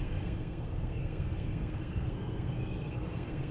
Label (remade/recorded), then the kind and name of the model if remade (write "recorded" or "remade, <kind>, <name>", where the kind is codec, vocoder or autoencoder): remade, codec, SNAC